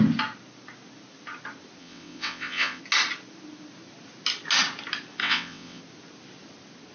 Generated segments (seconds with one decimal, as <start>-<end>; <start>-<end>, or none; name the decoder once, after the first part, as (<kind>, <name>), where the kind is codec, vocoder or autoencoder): 1.8-2.8 (vocoder, WaveNeXt); 5.2-5.8